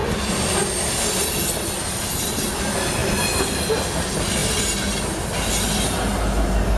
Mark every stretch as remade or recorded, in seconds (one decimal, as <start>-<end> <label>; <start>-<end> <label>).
0.0-2.6 remade; 2.6-6.8 recorded